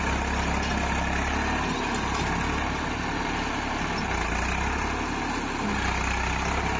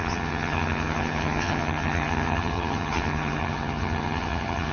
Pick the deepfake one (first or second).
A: second